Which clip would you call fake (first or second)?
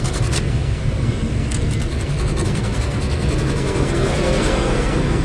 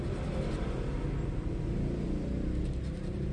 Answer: first